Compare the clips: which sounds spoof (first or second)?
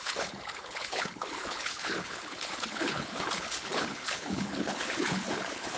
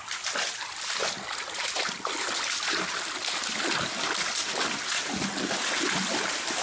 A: first